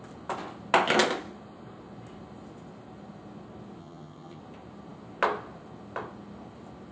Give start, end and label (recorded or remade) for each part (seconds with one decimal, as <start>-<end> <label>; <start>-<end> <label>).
0.0-3.8 recorded; 3.8-4.4 remade; 4.4-6.9 recorded